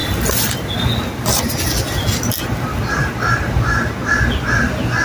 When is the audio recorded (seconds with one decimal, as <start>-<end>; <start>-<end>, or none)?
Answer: 0.0-5.0